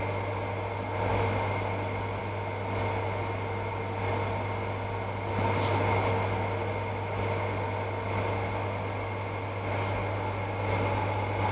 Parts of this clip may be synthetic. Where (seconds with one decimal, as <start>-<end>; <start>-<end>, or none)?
none